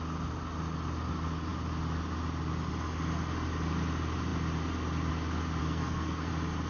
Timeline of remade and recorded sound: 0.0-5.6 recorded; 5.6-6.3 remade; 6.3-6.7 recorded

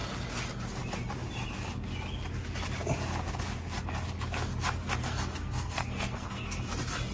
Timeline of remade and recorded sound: 0.0-5.0 recorded; 5.0-6.6 remade; 6.6-7.1 recorded

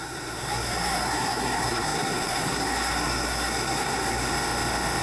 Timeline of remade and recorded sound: 0.0-4.3 remade; 4.3-5.0 recorded

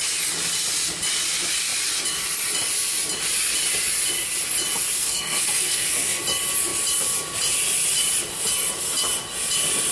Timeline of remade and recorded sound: 0.0-5.0 recorded; 5.0-6.2 remade; 6.2-9.9 recorded

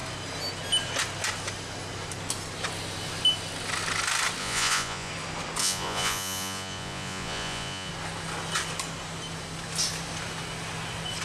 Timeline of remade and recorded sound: 0.0-4.4 recorded; 4.4-5.1 remade; 5.1-5.6 recorded; 5.6-7.9 remade; 7.9-11.2 recorded

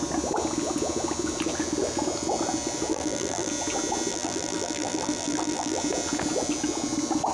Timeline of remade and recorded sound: 0.0-2.9 recorded; 2.9-3.5 remade; 3.5-4.1 recorded; 4.1-5.8 remade; 5.8-7.3 recorded

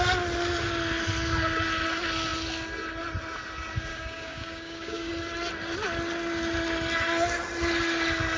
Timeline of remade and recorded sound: 0.0-3.9 recorded; 3.9-5.1 remade; 5.1-8.4 recorded

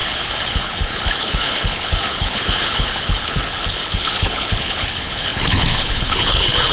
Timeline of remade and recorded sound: 0.0-6.7 remade